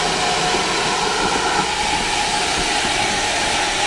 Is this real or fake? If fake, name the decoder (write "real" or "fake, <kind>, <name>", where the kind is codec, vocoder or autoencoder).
real